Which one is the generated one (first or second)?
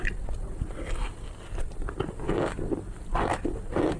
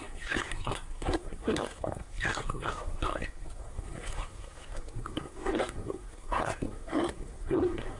second